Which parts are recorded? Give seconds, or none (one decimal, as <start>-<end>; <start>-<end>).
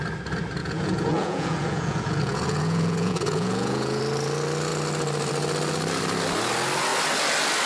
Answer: 0.0-0.6; 4.0-7.7